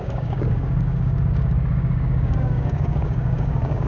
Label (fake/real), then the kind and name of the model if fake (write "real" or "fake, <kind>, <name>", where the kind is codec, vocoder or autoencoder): fake, codec, DAC